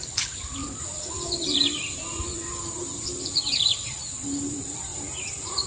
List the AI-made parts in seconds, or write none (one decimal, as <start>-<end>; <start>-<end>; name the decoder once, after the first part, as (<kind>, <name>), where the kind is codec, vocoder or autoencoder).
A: 0.0-5.7 (vocoder, BigVGAN v2)